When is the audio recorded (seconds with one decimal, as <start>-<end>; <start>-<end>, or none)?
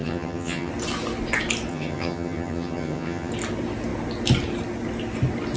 0.7-1.7; 3.3-5.6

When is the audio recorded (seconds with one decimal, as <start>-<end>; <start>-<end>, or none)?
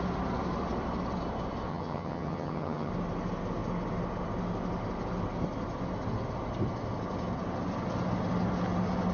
0.0-1.7; 2.9-9.1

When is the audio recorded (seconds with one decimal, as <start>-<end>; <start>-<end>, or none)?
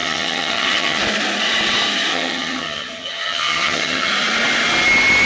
1.0-2.1; 4.1-5.3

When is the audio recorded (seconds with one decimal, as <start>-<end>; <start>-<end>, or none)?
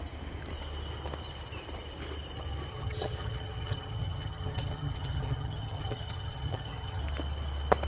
0.0-2.7; 7.0-7.9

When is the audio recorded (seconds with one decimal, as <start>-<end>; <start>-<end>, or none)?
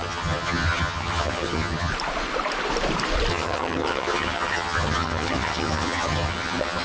1.9-3.3